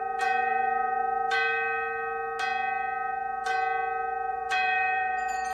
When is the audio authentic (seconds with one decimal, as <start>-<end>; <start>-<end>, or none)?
1.0-4.3